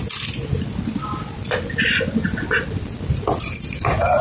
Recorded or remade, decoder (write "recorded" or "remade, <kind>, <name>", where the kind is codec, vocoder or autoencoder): recorded